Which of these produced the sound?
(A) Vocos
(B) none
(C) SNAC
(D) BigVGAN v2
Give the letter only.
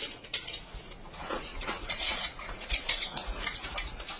A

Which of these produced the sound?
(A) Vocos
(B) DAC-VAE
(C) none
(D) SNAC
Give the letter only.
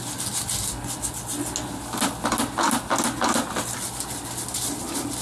C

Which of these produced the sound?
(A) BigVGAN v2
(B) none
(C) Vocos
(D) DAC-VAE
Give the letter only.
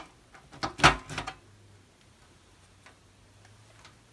B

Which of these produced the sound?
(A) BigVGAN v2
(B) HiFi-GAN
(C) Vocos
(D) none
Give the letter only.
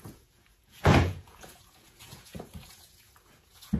C